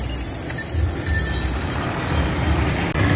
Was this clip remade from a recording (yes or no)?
no